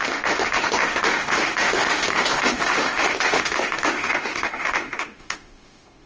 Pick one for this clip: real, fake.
fake